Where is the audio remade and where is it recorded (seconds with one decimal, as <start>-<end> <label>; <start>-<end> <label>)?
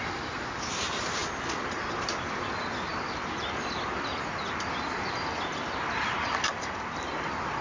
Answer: 0.0-7.6 recorded